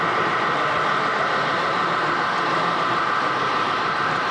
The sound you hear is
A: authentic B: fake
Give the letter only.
A